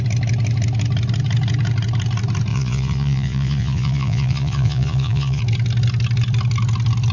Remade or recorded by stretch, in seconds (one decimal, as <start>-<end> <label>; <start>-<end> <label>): 0.0-2.5 recorded; 2.5-5.4 remade; 5.4-7.1 recorded

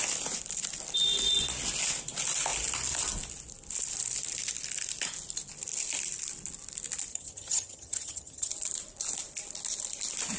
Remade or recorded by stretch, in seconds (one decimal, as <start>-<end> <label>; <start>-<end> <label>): 0.0-7.1 recorded; 7.1-8.5 remade; 8.5-10.4 recorded

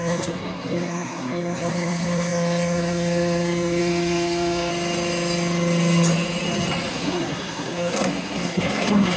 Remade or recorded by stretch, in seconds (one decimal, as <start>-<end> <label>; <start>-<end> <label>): 0.0-4.7 remade; 4.7-6.9 recorded; 6.9-9.2 remade